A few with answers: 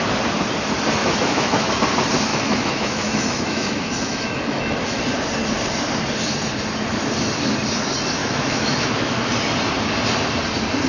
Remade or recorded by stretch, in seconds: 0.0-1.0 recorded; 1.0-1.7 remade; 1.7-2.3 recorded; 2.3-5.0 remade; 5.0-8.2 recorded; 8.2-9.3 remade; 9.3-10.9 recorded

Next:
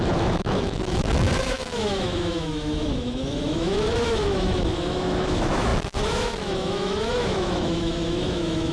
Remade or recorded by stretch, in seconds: 0.0-8.7 remade

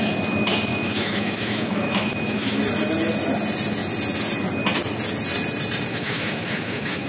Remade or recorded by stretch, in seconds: 0.0-0.7 recorded; 0.7-2.6 remade; 2.6-5.9 recorded; 5.9-7.1 remade